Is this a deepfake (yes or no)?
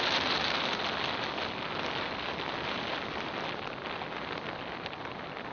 no